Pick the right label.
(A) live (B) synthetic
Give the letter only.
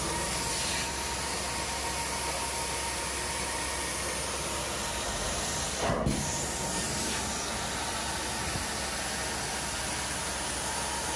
A